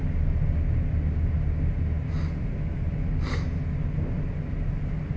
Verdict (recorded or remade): recorded